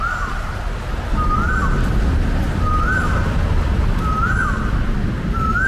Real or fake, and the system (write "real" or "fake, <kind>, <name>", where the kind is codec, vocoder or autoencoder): real